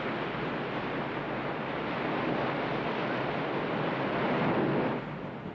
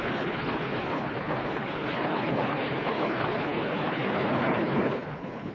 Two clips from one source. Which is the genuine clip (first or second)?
first